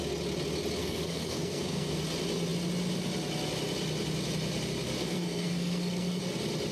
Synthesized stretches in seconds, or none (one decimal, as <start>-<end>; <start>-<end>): 0.8-2.0; 5.0-6.2